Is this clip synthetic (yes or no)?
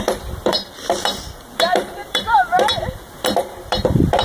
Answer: yes